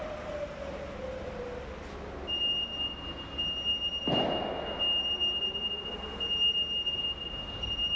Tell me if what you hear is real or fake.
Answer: real